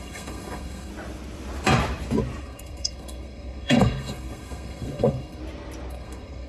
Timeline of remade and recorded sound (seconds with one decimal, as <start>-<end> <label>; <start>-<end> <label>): 0.0-0.9 remade; 0.9-2.4 recorded; 2.4-5.4 remade; 5.4-5.9 recorded; 5.9-6.5 remade